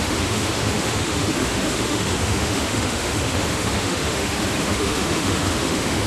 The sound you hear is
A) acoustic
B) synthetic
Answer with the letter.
B